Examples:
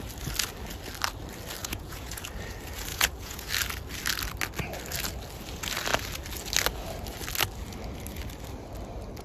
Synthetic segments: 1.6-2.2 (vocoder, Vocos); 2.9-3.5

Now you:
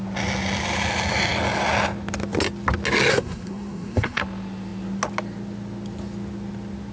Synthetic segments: 3.1-4.2 (codec, SNAC)

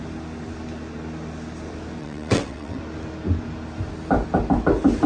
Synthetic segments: 2.0-2.8 (vocoder, WaveNeXt)

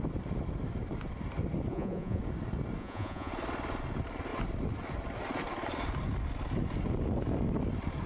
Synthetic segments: 1.7-2.2 (vocoder, Vocos); 2.8-3.3

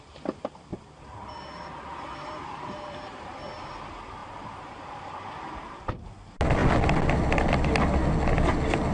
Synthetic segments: 0.7-3.7 (vocoder, BigVGAN v2); 4.2-5.3

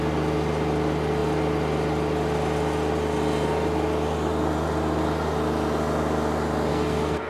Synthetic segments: 6.7-7.3 (codec, SNAC)

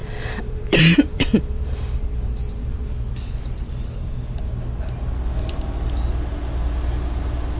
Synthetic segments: 0.0-2.8 (vocoder, BigVGAN v2)

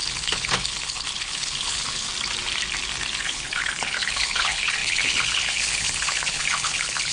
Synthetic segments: 0.0-2.1 (codec, HILCodec); 3.2-7.1